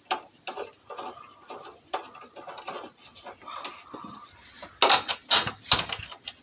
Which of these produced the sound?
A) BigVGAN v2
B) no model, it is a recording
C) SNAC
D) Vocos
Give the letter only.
B